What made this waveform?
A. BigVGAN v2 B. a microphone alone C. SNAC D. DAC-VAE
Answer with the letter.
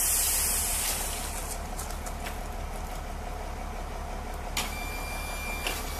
B